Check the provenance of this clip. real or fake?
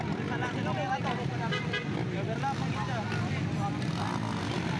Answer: real